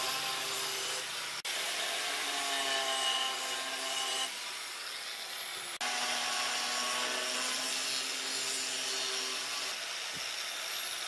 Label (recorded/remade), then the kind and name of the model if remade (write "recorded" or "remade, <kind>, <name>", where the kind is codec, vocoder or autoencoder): recorded